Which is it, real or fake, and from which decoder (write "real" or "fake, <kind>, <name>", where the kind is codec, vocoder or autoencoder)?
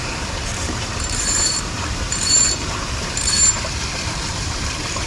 fake, vocoder, BigVGAN v2